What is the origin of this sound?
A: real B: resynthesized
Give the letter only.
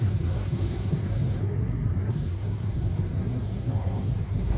B